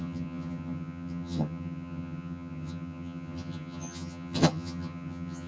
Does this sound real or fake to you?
fake